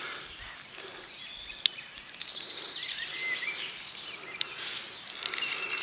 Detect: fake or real real